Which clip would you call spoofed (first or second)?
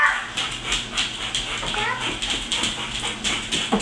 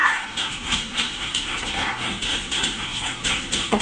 second